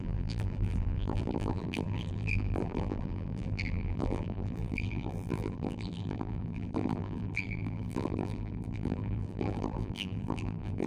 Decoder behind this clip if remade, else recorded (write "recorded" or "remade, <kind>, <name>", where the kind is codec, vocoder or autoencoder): remade, vocoder, BigVGAN v2